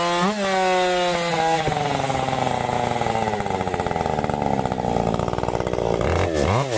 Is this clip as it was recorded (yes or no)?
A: yes